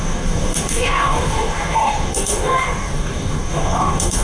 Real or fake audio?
fake